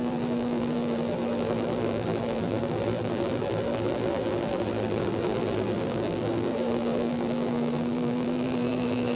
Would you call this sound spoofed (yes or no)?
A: yes